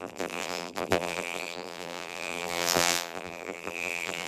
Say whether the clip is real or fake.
fake